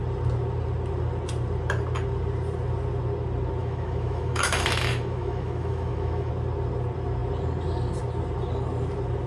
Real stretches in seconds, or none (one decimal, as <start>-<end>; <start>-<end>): 0.0-3.6; 6.3-9.3